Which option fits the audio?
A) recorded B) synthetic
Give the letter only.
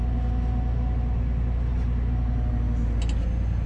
A